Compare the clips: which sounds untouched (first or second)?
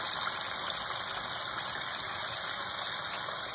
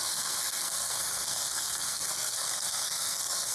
first